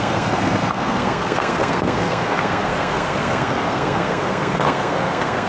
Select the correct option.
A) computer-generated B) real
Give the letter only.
A